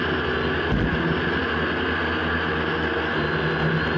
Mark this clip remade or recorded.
recorded